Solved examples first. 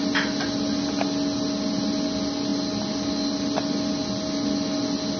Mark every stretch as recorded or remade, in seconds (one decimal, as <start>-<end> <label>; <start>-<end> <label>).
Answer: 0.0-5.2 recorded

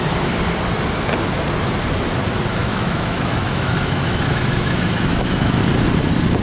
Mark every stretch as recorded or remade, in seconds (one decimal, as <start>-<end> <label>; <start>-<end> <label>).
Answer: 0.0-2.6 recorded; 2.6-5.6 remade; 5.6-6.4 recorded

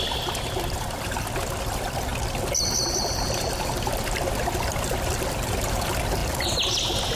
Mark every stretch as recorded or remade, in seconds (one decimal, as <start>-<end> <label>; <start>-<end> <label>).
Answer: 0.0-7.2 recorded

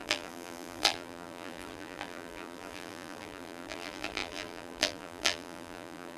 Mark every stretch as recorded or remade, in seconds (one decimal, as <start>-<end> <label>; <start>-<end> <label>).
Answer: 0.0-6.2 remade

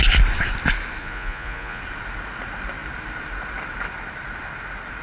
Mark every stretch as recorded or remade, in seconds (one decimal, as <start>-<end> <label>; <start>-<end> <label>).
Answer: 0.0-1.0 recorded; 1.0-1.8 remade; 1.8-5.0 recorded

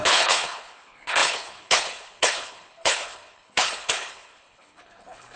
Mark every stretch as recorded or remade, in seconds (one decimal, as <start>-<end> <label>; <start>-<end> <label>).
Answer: 0.0-5.4 remade